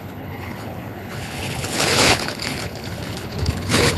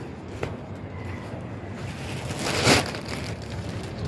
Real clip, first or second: second